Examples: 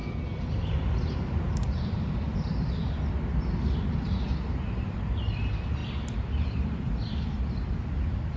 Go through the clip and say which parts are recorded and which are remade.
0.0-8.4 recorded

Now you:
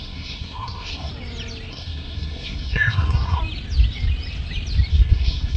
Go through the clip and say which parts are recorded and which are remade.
0.0-1.1 remade; 1.1-1.7 recorded; 1.7-3.4 remade; 3.4-4.9 recorded; 4.9-5.6 remade

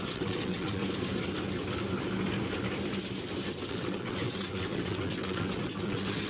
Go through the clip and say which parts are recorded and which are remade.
0.0-0.8 remade; 0.8-3.7 recorded; 3.7-6.3 remade

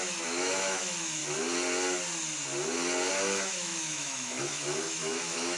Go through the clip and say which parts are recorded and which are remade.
0.0-1.2 remade; 1.2-3.1 recorded; 3.1-5.6 remade